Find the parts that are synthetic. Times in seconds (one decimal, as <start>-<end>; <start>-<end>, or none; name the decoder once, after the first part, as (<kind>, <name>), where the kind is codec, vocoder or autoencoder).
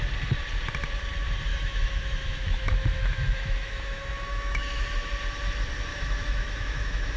1.5-4.8 (autoencoder, DAC-VAE); 5.9-7.2